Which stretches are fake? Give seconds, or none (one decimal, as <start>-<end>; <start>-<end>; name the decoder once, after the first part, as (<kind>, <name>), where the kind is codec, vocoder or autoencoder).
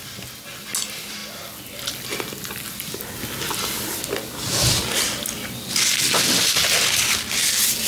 none